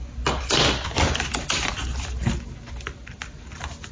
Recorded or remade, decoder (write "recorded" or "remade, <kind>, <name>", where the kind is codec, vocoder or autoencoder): recorded